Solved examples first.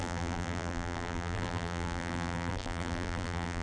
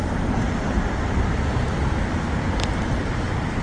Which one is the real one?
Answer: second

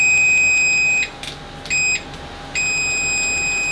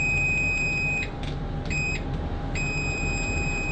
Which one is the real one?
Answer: first